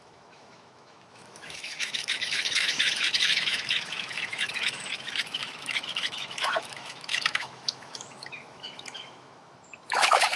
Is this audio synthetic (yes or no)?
yes